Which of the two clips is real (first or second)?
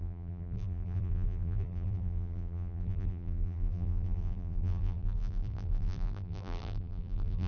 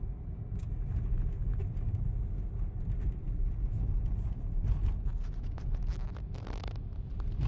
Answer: second